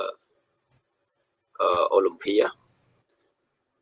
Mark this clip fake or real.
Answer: real